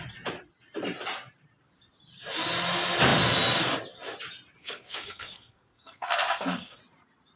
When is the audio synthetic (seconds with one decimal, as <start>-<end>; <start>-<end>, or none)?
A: 4.6-6.8